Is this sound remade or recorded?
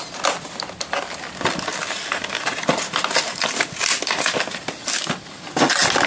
recorded